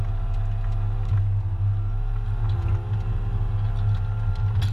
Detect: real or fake real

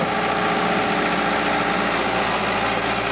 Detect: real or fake real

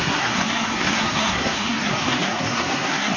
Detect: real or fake fake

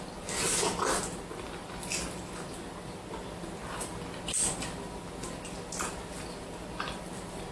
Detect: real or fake real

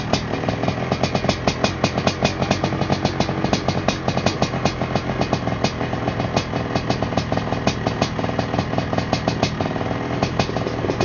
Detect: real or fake real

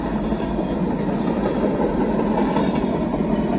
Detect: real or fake real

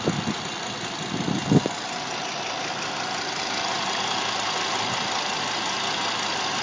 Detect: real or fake real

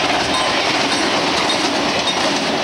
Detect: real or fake real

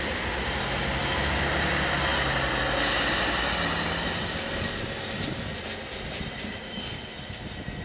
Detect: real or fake real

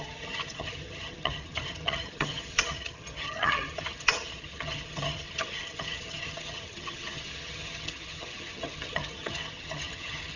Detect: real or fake fake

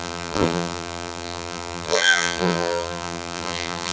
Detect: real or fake fake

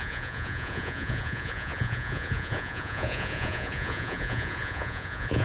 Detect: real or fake fake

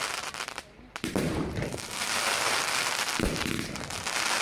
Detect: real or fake fake